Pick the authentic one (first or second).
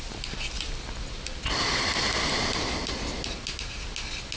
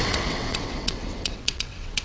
first